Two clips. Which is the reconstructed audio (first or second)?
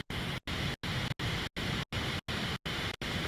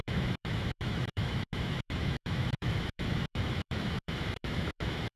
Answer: second